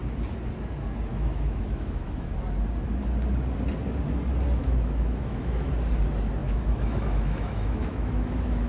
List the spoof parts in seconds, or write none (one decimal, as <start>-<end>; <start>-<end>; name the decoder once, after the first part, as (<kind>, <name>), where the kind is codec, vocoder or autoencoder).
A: 1.1-2.3 (autoencoder, DAC-VAE); 4.6-5.7; 6.4-8.7